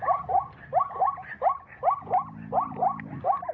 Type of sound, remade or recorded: recorded